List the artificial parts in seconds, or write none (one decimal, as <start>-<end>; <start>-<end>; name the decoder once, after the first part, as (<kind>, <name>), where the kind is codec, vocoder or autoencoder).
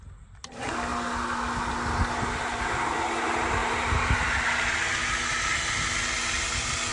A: none